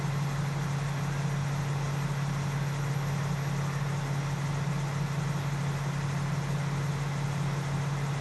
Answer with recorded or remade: recorded